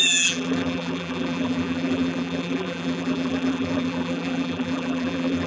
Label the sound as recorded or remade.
remade